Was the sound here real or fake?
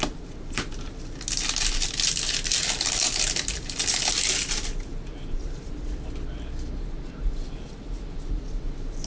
real